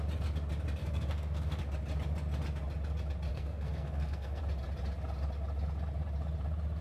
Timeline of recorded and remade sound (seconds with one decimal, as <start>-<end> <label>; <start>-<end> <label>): 0.0-0.8 recorded; 0.8-1.6 remade; 1.6-3.3 recorded; 3.3-4.4 remade; 4.4-6.8 recorded